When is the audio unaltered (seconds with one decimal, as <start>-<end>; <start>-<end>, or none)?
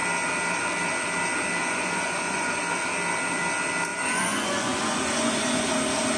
0.0-1.6; 2.6-3.9; 5.7-6.2